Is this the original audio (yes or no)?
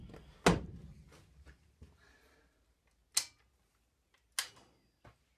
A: yes